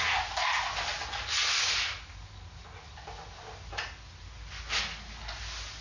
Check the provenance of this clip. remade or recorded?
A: recorded